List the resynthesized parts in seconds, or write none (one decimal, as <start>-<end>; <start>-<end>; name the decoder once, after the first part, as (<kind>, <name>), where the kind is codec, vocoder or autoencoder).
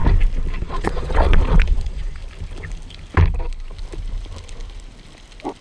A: 0.6-2.2 (vocoder, Vocos)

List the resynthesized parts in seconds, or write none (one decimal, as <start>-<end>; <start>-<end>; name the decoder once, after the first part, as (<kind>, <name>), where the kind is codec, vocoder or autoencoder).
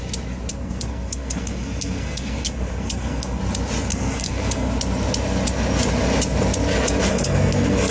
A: 0.5-3.4 (codec, SNAC); 3.9-4.7; 7.1-7.9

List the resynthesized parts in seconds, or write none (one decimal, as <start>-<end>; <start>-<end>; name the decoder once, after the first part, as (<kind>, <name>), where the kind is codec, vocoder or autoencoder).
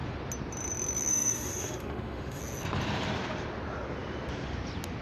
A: 1.1-2.4 (autoencoder, DAC-VAE)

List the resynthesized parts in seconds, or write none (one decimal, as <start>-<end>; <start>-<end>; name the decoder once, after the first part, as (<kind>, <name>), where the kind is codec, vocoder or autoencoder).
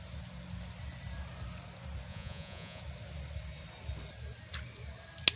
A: 2.1-2.8 (vocoder, Vocos)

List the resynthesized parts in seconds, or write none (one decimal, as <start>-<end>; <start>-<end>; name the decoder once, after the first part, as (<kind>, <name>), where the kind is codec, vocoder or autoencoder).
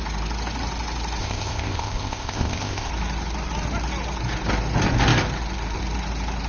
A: 1.2-2.9 (codec, ZipCodec)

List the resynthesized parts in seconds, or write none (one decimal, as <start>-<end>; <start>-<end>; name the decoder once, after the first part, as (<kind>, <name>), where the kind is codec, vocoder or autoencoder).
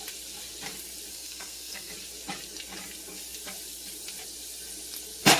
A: 1.1-1.9 (codec, SNAC)